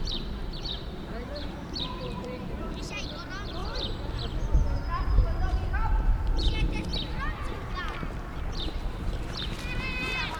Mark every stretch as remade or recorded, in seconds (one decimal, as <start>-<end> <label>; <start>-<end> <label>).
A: 0.0-3.6 remade; 3.6-5.0 recorded; 5.0-6.9 remade; 6.9-8.4 recorded; 8.4-10.4 remade